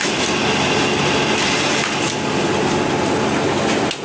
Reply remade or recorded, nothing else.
recorded